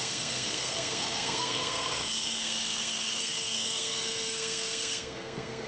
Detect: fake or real fake